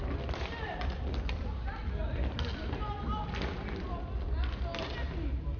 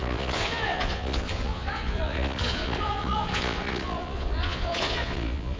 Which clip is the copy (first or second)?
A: second